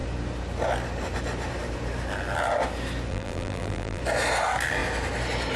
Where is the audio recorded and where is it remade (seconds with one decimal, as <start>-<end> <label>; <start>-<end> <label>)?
0.0-3.1 recorded; 3.1-4.0 remade; 4.0-5.6 recorded